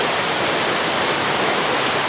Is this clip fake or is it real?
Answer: real